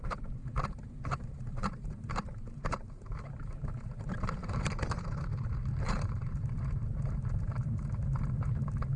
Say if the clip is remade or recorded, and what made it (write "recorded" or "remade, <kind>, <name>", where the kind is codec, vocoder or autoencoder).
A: remade, vocoder, BigVGAN v2